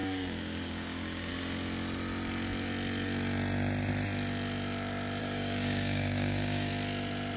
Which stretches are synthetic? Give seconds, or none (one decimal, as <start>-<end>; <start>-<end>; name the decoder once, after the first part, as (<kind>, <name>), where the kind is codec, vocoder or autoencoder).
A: 0.0-1.3 (codec, DAC); 5.2-6.7